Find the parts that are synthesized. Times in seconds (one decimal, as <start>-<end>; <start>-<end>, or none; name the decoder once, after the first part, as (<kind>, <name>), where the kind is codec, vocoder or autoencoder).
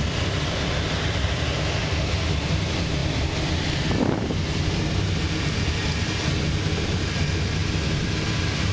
none